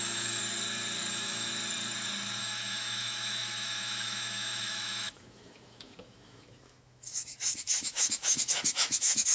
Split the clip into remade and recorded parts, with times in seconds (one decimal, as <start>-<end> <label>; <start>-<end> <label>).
0.0-0.4 remade; 0.4-1.1 recorded; 1.1-1.5 remade; 1.5-2.4 recorded; 2.4-9.3 remade